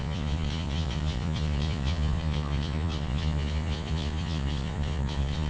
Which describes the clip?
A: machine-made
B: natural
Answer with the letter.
A